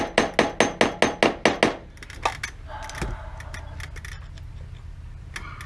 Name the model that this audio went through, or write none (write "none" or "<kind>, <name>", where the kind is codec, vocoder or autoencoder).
none